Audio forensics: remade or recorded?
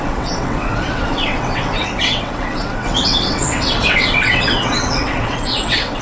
remade